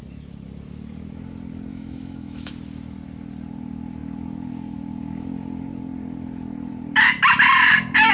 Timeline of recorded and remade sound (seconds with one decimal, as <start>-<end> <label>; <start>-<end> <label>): 0.0-1.7 recorded; 1.7-2.5 remade; 2.5-8.1 recorded